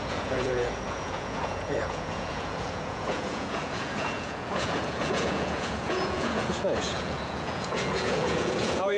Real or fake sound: fake